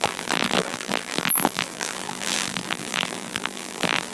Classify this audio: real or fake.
fake